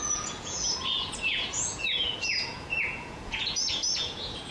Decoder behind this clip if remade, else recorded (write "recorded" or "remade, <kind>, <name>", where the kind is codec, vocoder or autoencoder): remade, vocoder, Vocos